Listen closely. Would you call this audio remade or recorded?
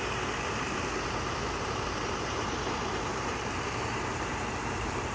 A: remade